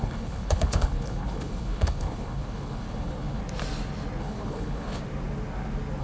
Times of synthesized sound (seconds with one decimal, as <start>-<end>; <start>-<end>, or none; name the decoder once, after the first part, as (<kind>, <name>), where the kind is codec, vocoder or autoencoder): 0.0-3.4 (codec, HILCodec); 4.2-5.0